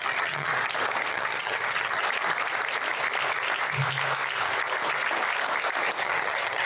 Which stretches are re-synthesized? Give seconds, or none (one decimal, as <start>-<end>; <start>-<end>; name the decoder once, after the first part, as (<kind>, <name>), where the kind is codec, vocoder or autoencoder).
0.0-0.5 (vocoder, HiFi-GAN); 1.1-2.0; 6.0-6.7